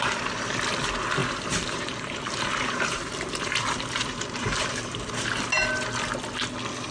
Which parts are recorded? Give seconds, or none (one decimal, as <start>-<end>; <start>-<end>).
0.0-1.2; 5.3-6.9